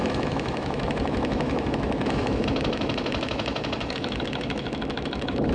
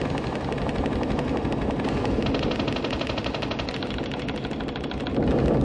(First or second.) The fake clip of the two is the first